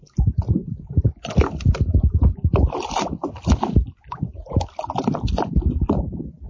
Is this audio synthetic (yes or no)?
no